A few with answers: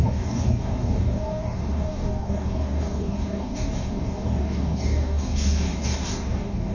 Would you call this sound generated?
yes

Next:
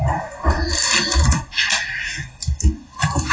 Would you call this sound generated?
no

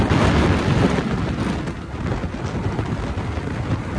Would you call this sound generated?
no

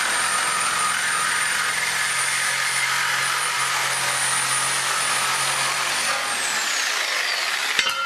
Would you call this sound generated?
no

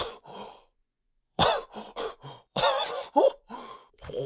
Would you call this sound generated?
yes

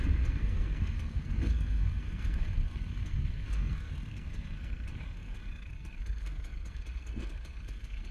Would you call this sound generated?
yes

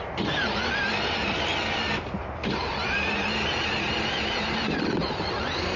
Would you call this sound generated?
no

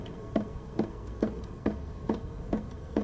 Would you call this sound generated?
yes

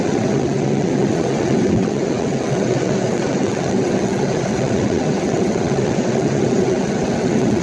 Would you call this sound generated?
yes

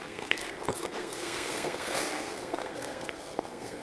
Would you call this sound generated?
yes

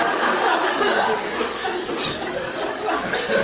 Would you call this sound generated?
yes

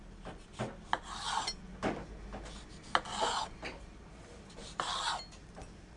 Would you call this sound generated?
no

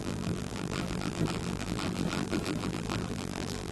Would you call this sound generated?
yes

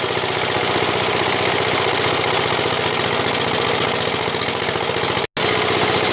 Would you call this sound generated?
no